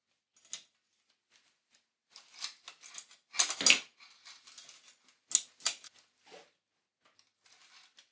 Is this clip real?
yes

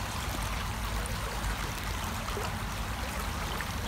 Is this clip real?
yes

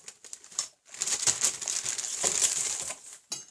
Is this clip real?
yes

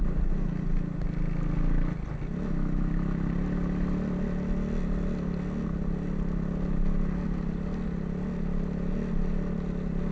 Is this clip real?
yes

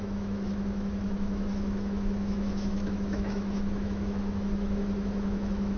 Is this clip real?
no